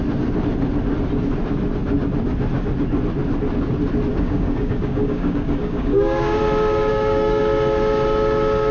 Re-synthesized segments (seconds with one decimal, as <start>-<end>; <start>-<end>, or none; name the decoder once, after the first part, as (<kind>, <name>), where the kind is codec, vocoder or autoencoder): 4.1-6.4 (codec, DAC); 6.9-7.4